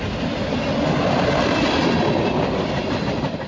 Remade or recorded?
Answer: recorded